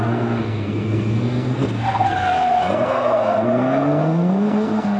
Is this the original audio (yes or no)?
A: no